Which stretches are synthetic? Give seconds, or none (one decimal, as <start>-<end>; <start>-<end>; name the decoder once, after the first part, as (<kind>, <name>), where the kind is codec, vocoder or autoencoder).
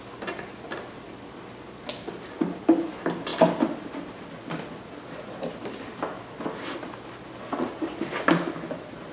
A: none